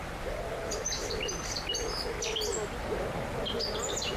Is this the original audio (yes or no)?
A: yes